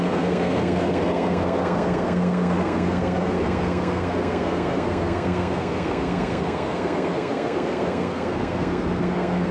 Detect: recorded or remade remade